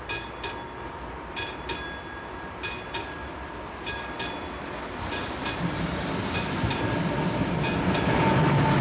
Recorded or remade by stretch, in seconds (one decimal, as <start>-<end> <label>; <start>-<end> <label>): 0.0-3.2 recorded; 3.2-4.0 remade; 4.0-5.4 recorded; 5.4-7.6 remade; 7.6-8.8 recorded